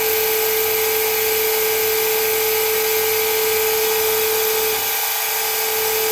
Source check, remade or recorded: recorded